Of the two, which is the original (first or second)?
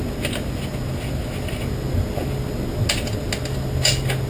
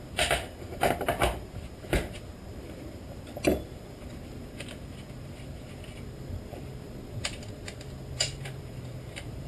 first